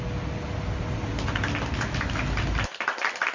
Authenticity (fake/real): real